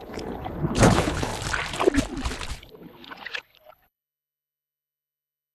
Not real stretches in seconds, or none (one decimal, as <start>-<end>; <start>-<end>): 0.0-1.3; 2.5-5.5